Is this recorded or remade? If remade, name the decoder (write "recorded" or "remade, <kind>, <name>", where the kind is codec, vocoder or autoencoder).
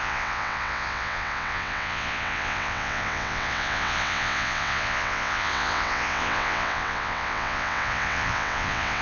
remade, vocoder, WaveNeXt